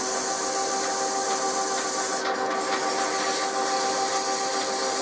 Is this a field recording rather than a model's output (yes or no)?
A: yes